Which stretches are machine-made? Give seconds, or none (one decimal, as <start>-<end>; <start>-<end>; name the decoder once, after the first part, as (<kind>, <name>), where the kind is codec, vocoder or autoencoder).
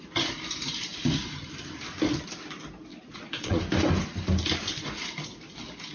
2.9-3.6 (vocoder, Vocos)